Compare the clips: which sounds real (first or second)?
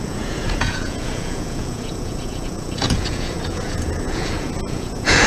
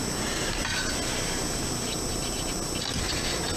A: second